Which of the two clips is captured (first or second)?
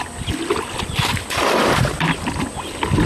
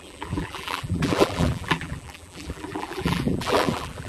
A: first